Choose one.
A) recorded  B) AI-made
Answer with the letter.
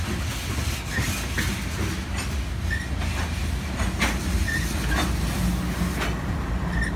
A